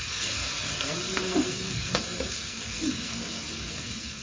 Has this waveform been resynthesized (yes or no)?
yes